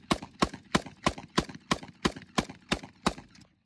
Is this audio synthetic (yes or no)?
no